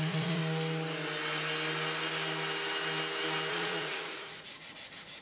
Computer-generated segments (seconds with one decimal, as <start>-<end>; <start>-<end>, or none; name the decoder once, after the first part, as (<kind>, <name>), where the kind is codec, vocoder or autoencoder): 0.0-0.4 (vocoder, Vocos); 3.5-5.2